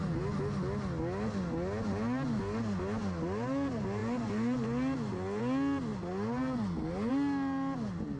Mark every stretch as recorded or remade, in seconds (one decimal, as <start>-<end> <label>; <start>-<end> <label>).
0.0-8.2 recorded